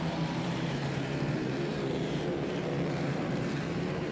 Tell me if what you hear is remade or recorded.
remade